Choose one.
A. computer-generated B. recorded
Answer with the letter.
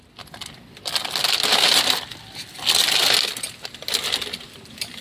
B